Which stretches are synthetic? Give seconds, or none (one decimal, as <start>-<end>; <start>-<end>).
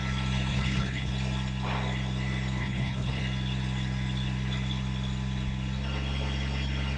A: 0.5-1.1; 2.6-3.2